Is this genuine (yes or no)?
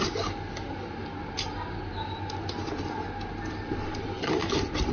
yes